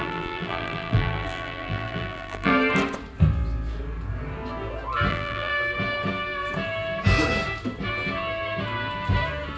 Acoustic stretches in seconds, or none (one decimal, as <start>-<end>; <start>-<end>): 2.5-5.1; 5.5-9.6